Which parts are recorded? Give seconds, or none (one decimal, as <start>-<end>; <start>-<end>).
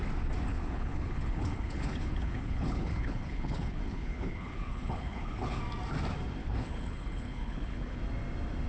0.0-0.5; 5.6-6.4; 8.0-8.7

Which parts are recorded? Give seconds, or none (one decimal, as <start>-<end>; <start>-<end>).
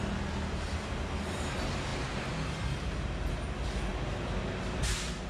0.0-5.3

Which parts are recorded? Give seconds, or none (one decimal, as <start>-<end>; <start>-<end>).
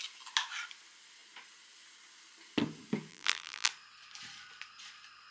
0.0-3.1; 3.7-5.3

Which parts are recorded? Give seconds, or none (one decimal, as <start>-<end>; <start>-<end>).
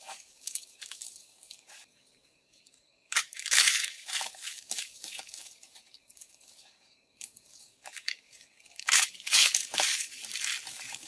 10.2-10.7